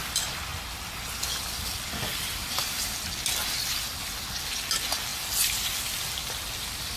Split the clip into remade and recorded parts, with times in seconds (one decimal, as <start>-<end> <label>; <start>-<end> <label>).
0.0-6.2 recorded; 6.2-7.0 remade